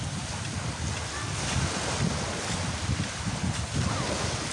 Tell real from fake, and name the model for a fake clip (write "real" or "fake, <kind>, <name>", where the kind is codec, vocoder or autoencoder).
real